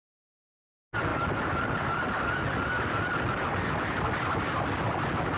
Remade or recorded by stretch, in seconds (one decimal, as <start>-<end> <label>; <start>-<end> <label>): 0.0-5.4 recorded